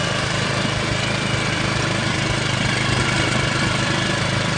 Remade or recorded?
remade